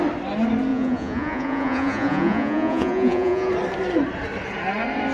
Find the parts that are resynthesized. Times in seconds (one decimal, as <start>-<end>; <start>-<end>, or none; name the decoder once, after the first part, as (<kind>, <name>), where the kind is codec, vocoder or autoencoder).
0.7-3.5 (vocoder, Vocos)